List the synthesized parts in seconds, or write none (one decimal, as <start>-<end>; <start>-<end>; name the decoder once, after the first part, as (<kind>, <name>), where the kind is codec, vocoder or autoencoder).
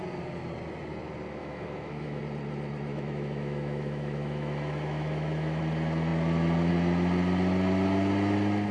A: 1.4-2.2 (autoencoder, DAC-VAE); 2.9-5.6